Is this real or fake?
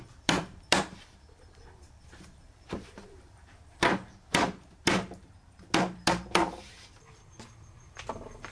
fake